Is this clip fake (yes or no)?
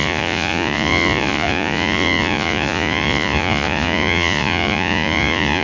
yes